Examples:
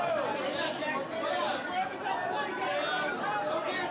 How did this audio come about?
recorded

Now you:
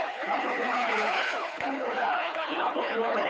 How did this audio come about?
remade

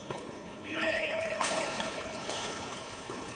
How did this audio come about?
remade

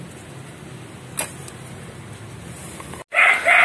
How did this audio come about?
recorded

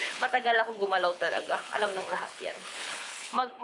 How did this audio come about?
remade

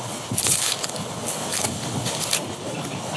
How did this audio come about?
remade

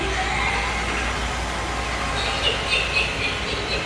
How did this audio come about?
recorded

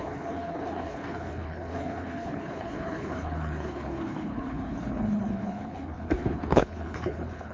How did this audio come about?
remade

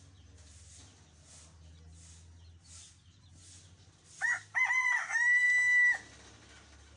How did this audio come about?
recorded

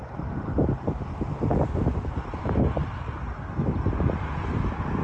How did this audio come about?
recorded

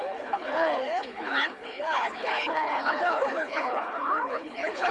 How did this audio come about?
remade